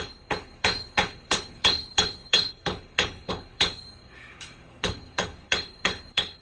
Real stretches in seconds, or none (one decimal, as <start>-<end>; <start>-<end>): none

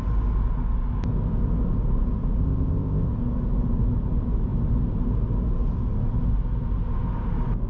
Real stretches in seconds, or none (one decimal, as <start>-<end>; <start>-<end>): 0.0-2.4; 3.1-7.7

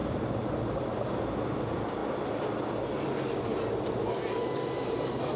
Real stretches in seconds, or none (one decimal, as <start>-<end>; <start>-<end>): 0.0-5.4